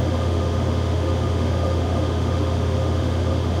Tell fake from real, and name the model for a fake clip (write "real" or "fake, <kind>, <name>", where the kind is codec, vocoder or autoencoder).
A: fake, autoencoder, DAC-VAE